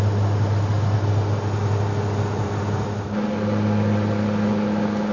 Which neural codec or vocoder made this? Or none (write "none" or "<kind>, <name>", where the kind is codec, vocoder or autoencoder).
none